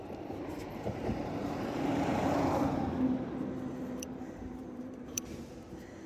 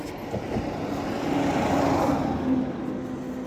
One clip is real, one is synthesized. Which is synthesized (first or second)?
first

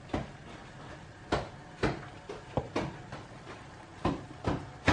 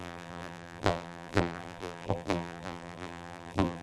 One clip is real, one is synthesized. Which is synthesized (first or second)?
second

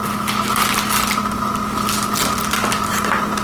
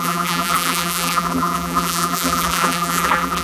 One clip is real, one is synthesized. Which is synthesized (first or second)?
second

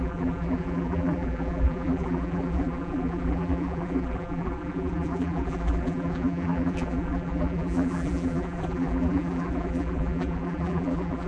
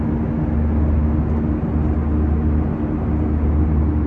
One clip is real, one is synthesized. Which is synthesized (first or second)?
first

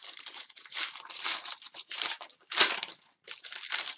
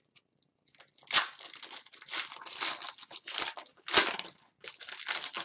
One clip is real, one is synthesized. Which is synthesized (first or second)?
first